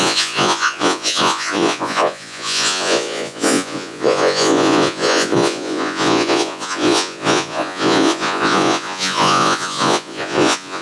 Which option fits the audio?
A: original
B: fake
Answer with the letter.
B